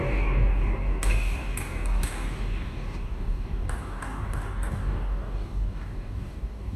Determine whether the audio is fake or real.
fake